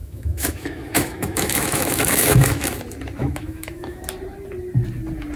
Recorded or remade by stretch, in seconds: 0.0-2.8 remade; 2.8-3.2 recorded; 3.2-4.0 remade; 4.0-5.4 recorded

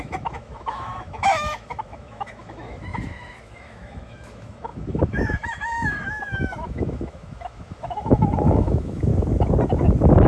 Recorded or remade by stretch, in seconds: 0.0-9.1 remade; 9.1-10.3 recorded

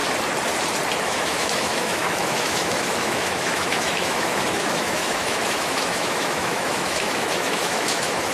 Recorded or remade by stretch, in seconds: 0.0-1.0 recorded; 1.0-8.3 remade

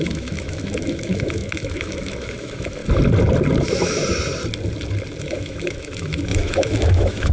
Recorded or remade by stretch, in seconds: 0.0-2.8 remade; 2.8-3.6 recorded; 3.6-4.0 remade; 4.0-5.2 recorded; 5.2-7.3 remade

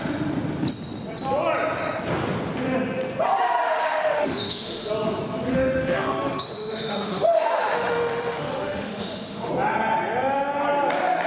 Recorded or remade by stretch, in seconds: 0.0-3.8 recorded; 3.8-4.9 remade; 4.9-5.5 recorded; 5.5-9.5 remade; 9.5-11.3 recorded